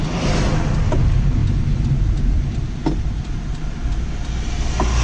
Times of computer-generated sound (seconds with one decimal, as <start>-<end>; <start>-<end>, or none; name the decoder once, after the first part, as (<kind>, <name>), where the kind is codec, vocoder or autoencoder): none